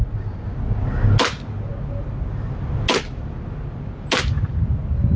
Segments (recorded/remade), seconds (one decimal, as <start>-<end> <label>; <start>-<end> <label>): 0.0-5.2 recorded